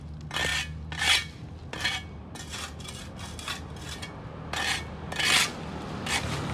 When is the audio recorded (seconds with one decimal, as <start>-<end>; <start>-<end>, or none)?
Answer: 0.0-6.5